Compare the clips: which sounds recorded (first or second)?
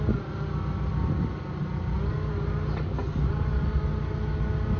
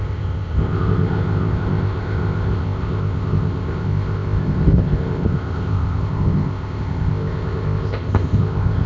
first